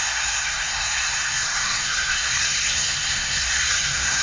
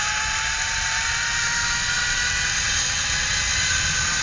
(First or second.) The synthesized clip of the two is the first